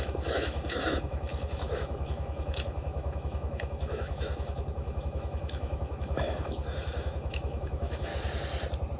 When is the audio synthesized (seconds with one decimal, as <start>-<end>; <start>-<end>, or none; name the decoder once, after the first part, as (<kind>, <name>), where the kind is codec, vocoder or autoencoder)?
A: 0.0-8.1 (autoencoder, DAC-VAE)